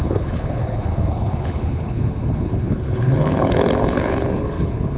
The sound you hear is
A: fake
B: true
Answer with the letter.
A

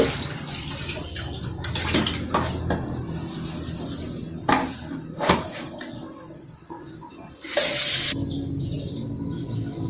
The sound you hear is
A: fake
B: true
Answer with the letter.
B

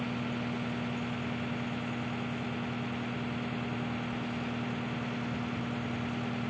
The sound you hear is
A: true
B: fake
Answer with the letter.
A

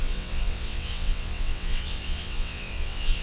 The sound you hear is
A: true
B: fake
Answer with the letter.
B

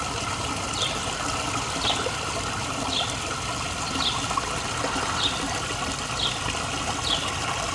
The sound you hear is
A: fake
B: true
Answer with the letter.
B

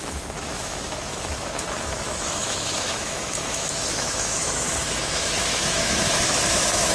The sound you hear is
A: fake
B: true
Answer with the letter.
A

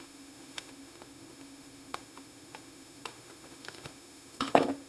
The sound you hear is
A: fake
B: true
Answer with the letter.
A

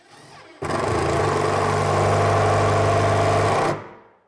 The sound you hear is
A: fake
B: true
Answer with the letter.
B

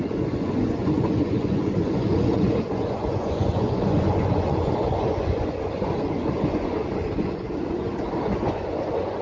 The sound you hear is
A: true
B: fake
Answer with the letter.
B